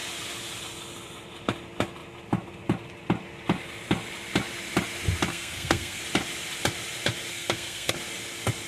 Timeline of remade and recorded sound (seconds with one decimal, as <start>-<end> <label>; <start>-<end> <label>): 0.0-5.3 recorded; 5.3-6.0 remade; 6.0-7.3 recorded; 7.3-7.9 remade; 7.9-8.7 recorded